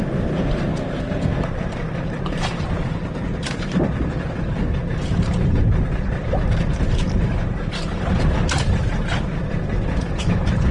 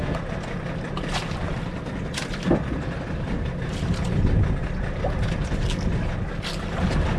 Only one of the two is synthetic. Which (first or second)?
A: first